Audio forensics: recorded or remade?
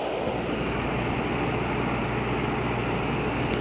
recorded